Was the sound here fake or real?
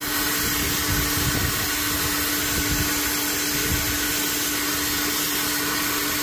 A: real